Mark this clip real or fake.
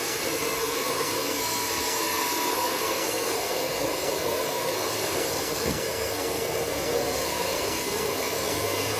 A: fake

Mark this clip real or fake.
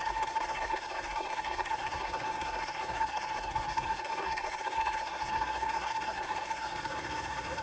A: fake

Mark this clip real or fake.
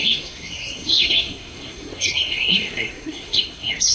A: fake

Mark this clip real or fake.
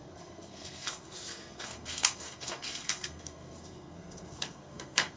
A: fake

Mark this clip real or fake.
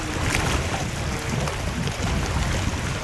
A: real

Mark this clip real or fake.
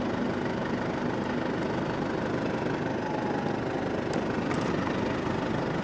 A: real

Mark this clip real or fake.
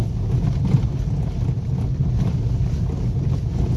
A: real